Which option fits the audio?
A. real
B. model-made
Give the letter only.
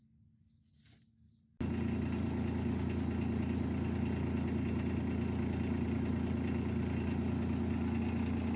A